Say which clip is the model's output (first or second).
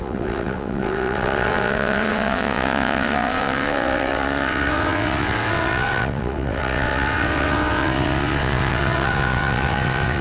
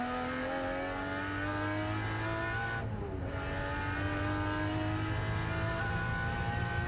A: first